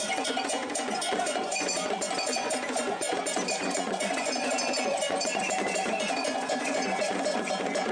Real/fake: fake